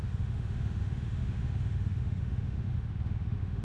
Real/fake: fake